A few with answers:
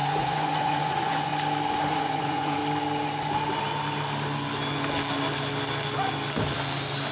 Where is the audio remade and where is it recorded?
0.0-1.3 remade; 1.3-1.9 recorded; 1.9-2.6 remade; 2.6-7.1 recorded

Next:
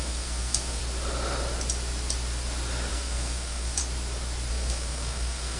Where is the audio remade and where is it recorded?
0.0-0.8 remade; 0.8-2.9 recorded; 2.9-3.8 remade; 3.8-4.5 recorded; 4.5-5.6 remade

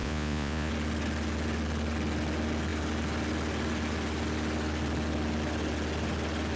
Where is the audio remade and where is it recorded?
0.0-0.7 remade; 0.7-6.6 recorded

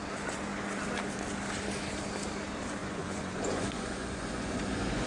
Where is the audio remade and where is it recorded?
0.0-2.8 recorded; 2.8-5.1 remade

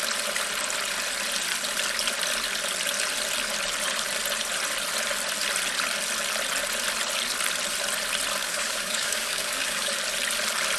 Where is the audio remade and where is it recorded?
0.0-8.4 recorded; 8.4-10.0 remade; 10.0-10.8 recorded

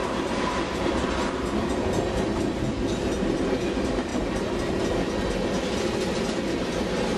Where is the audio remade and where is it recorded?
0.0-0.9 remade; 0.9-7.2 recorded

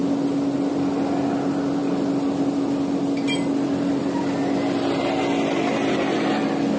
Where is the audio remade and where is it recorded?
0.0-6.8 recorded

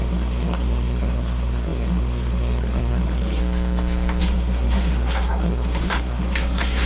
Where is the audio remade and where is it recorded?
0.0-3.4 remade; 3.4-4.2 recorded; 4.2-6.9 remade